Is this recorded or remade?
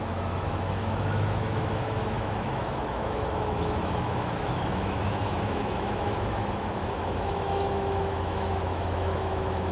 remade